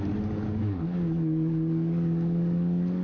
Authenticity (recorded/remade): remade